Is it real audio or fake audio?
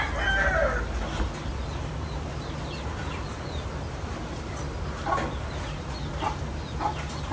real